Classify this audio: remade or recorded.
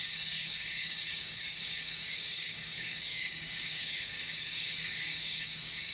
remade